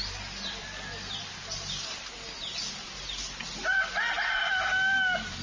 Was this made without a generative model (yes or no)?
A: yes